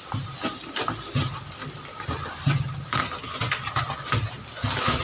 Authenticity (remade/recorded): recorded